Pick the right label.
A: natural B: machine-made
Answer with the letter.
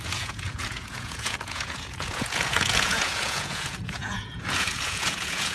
B